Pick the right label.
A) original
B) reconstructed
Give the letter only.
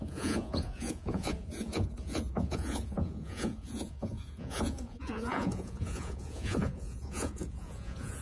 B